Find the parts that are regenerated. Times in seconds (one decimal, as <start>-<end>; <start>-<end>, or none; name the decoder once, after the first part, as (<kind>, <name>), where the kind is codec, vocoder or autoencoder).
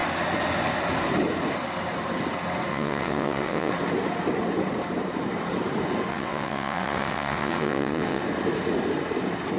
2.7-3.7 (vocoder, WaveNeXt); 6.1-8.2